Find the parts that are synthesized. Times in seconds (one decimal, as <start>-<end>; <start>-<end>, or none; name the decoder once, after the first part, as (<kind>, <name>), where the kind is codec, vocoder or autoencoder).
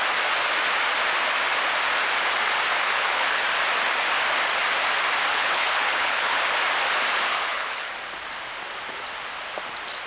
2.9-3.4 (codec, HILCodec); 5.3-6.4; 7.3-7.9